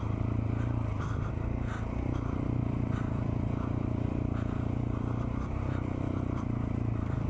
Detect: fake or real real